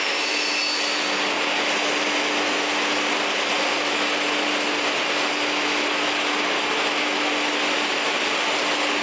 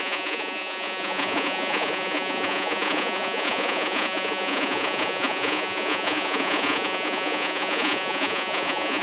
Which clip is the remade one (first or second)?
second